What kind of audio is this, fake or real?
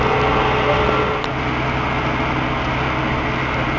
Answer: real